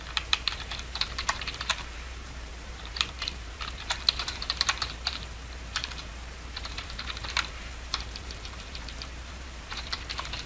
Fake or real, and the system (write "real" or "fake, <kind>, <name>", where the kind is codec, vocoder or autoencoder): fake, vocoder, BigVGAN v2